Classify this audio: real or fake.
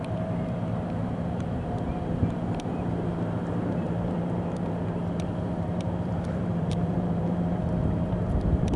fake